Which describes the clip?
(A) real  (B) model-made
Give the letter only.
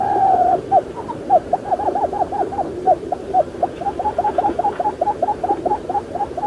B